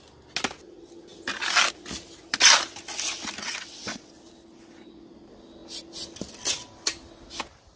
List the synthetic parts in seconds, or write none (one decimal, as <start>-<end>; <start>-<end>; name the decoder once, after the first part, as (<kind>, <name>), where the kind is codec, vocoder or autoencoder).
3.4-4.1 (vocoder, WaveNeXt)